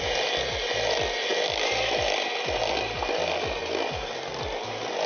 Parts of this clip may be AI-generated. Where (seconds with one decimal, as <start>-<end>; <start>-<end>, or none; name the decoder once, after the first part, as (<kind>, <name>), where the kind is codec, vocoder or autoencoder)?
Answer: none